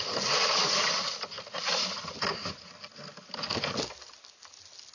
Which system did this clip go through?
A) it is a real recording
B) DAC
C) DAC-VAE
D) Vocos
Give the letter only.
A